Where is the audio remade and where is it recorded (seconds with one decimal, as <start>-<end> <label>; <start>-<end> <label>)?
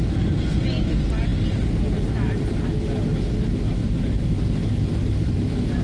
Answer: 0.0-5.8 recorded